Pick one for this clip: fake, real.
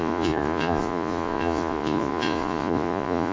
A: fake